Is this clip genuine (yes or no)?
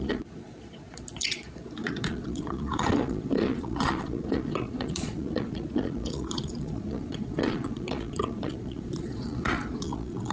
no